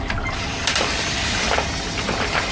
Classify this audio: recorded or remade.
recorded